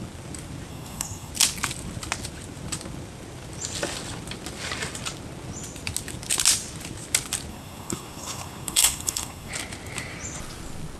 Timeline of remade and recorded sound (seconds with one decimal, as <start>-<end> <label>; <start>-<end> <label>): 0.0-0.7 recorded; 0.7-1.3 remade; 1.3-7.5 recorded; 7.5-9.5 remade; 9.5-11.0 recorded